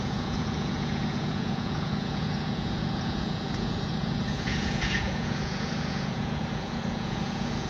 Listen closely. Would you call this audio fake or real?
fake